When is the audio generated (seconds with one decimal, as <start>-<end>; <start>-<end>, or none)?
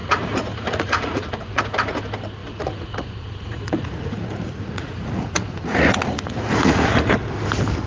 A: 0.0-1.6; 2.4-7.1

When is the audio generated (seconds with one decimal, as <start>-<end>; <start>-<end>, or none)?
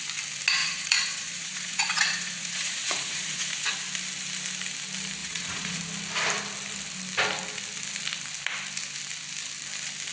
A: 0.6-3.7; 5.2-5.8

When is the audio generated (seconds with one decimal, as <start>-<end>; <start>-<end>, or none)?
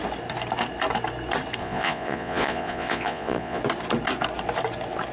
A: 1.6-3.6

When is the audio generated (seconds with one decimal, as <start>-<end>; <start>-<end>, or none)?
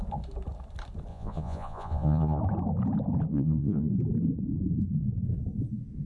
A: 1.1-2.4; 3.3-3.9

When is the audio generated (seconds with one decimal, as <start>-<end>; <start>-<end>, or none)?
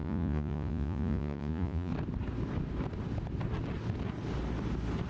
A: 0.0-1.9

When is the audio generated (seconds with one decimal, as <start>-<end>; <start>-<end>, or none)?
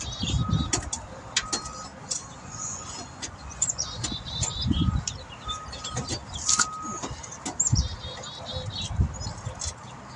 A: 1.9-4.9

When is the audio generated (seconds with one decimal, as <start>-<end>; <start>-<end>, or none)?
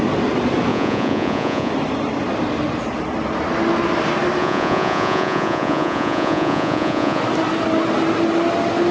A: 0.7-1.7; 4.4-7.2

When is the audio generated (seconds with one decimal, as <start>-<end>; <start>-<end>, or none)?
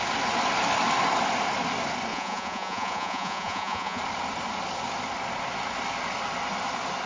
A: 2.1-4.0